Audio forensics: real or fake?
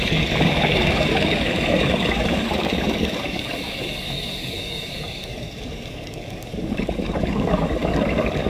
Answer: fake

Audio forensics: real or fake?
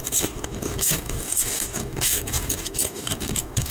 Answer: fake